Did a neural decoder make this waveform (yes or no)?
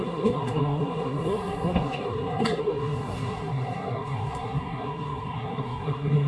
yes